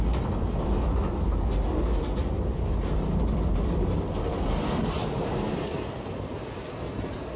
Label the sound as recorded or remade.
recorded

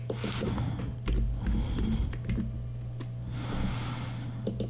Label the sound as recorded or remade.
recorded